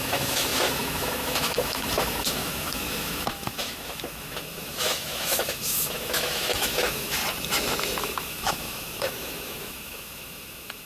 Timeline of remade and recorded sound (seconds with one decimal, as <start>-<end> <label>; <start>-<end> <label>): 0.0-7.2 remade; 7.2-8.0 recorded; 8.0-10.9 remade